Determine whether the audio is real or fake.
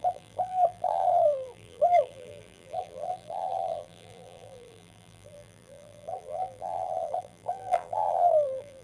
fake